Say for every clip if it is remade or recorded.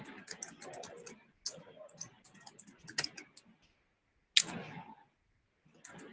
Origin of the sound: recorded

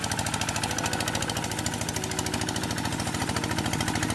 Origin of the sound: recorded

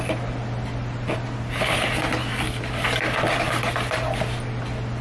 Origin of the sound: recorded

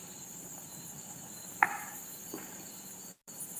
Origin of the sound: remade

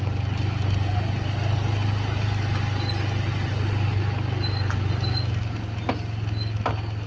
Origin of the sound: recorded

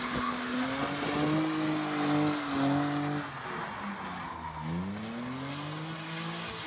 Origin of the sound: recorded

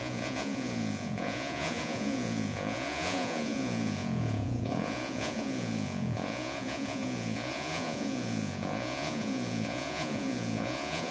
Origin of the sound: remade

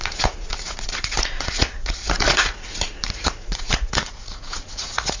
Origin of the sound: remade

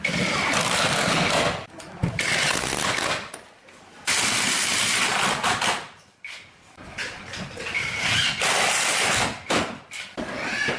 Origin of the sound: recorded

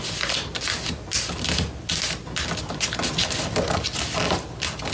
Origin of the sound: recorded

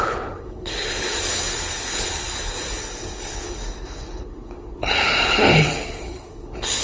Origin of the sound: remade